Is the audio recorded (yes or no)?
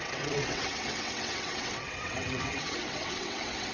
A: no